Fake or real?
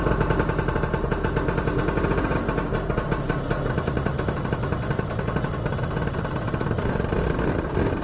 real